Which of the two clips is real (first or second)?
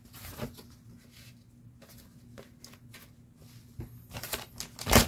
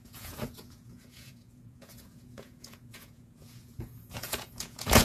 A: first